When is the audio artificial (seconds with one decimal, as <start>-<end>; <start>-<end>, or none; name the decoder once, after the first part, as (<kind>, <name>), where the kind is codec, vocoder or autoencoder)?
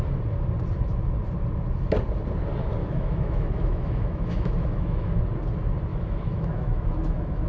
2.8-5.2 (autoencoder, DAC-VAE); 5.9-7.5